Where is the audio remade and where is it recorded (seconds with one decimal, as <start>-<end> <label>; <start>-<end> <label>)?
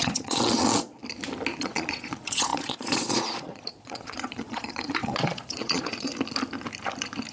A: 0.0-1.0 remade; 1.0-1.6 recorded; 1.6-6.1 remade; 6.1-7.3 recorded